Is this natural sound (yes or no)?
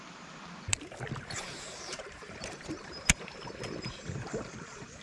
no